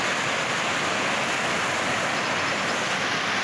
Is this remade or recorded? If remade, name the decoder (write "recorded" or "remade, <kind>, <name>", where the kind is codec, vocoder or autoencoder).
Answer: recorded